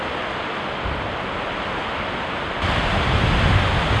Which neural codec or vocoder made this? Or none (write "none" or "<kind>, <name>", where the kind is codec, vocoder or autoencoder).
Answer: none